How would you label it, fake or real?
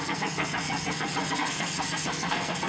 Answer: fake